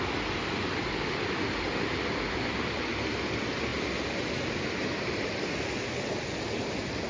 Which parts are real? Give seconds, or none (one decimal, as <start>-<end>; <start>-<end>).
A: 0.0-7.1